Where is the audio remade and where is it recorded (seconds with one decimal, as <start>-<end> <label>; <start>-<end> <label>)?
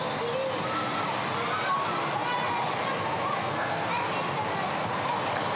0.0-3.4 recorded; 3.4-3.9 remade; 3.9-5.6 recorded